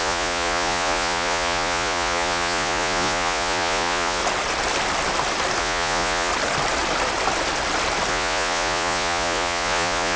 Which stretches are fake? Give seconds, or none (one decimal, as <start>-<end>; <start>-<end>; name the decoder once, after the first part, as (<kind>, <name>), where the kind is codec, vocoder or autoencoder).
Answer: 0.0-4.2 (vocoder, Vocos); 5.6-6.3; 8.1-10.2